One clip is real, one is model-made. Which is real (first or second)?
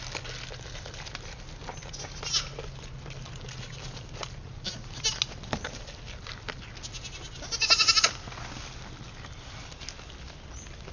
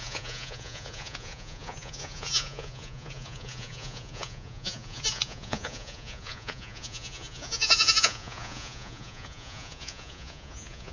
first